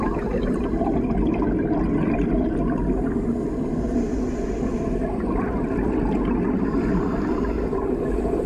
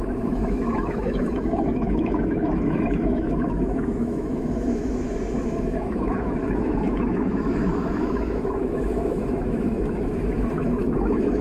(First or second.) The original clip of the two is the first